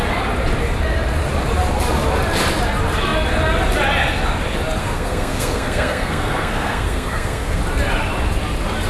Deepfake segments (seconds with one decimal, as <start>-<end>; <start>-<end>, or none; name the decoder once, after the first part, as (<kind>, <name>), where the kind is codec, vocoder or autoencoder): 4.8-7.6 (codec, SNAC)